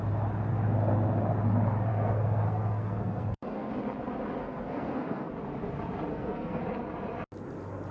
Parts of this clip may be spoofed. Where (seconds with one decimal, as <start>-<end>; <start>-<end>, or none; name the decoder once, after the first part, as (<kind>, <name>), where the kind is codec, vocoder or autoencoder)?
1.9-3.7 (codec, SNAC); 4.4-5.3; 6.1-6.6